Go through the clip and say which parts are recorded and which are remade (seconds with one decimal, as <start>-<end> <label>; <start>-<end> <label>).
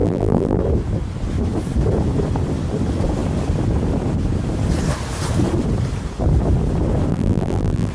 0.0-0.6 remade; 0.6-7.1 recorded; 7.1-7.9 remade